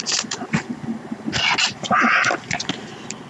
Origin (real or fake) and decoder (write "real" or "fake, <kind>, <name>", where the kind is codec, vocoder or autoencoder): real